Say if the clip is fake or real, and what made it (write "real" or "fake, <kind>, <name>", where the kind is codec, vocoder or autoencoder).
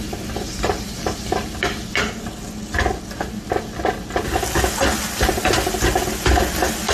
real